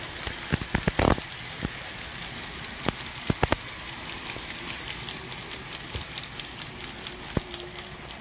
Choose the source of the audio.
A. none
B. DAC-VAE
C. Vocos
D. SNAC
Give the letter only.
A